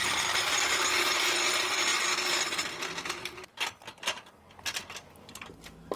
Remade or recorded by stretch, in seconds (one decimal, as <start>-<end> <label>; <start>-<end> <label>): 0.0-6.0 recorded